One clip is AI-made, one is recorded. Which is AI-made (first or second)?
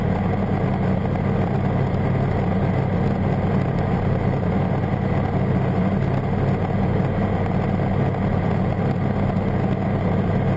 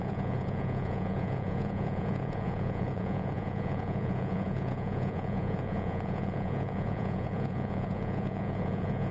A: second